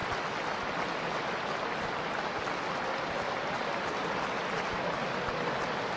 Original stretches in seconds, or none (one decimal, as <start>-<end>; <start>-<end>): 0.0-6.0